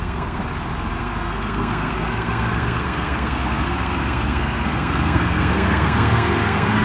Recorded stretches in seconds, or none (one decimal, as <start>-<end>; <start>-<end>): 0.4-1.0